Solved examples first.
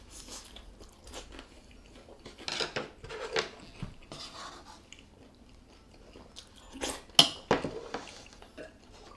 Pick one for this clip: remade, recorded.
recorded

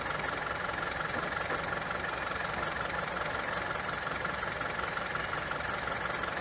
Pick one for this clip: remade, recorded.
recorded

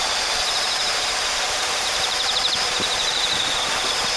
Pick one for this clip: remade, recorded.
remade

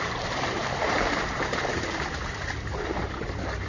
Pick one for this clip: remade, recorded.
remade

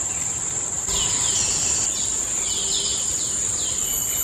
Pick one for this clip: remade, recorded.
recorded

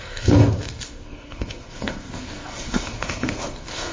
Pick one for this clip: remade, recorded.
remade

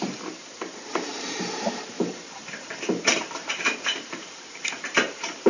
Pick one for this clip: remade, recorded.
remade